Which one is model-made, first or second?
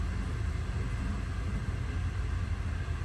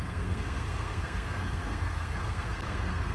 second